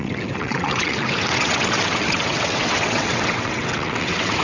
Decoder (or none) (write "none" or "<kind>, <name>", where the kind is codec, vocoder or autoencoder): vocoder, WaveNeXt